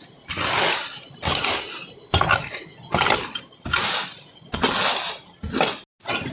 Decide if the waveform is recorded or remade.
recorded